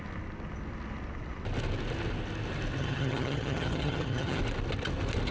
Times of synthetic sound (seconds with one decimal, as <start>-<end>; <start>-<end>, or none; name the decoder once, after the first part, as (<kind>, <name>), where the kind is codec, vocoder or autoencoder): 2.8-4.4 (vocoder, HiFi-GAN)